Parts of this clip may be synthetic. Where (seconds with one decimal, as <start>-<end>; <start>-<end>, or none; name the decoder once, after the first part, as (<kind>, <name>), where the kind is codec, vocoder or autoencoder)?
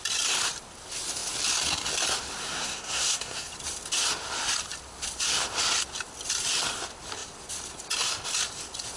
2.4-3.5 (codec, SNAC)